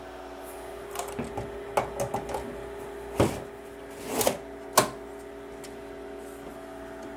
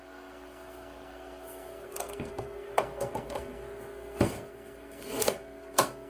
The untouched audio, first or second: first